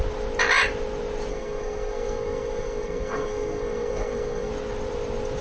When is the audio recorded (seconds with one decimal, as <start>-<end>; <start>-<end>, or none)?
0.0-1.3; 4.5-5.4